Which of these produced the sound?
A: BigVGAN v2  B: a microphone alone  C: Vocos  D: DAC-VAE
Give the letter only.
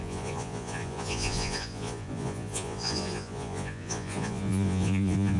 C